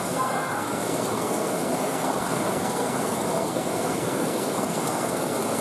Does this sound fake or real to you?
fake